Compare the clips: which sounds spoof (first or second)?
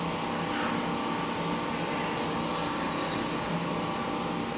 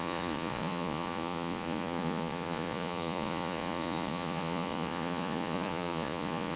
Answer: second